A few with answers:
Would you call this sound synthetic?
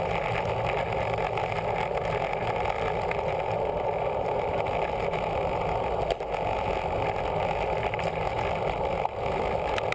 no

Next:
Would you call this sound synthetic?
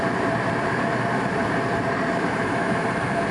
yes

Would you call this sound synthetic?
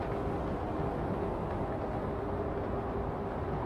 no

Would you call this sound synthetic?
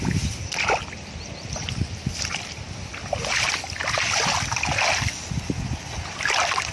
no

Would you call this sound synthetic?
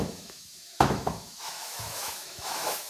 yes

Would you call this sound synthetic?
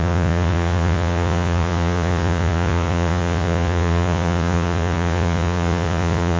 yes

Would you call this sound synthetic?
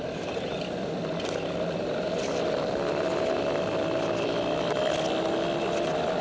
no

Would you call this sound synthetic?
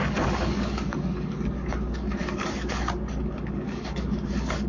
yes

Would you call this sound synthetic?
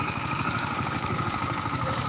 yes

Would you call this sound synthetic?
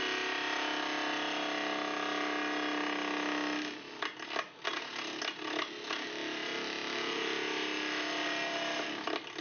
no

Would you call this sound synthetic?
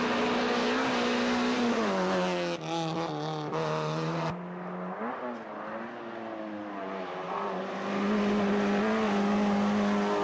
no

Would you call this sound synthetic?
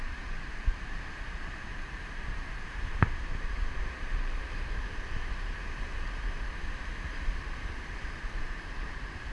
yes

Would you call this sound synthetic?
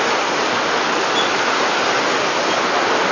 no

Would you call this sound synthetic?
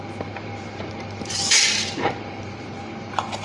yes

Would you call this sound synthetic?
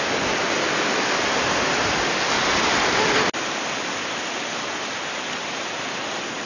no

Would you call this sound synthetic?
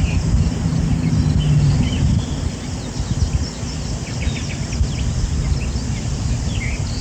no